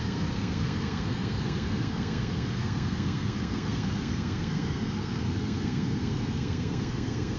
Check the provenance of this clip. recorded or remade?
remade